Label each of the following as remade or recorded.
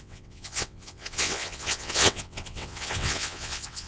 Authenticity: remade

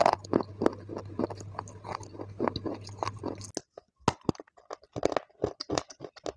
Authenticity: recorded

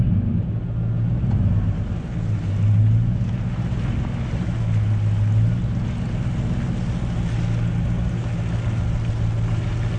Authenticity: recorded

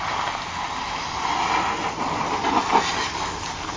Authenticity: recorded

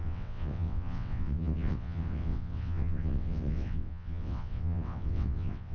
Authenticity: remade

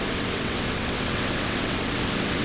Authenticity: remade